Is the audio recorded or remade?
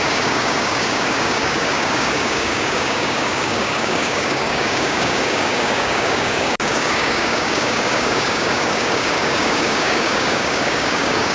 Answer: remade